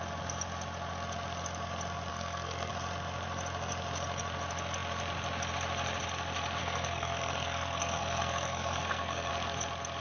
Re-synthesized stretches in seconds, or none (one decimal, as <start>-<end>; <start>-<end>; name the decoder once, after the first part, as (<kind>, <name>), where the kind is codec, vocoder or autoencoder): 2.1-2.7 (codec, SNAC); 6.6-9.3